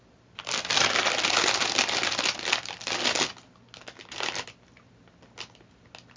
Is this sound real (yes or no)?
yes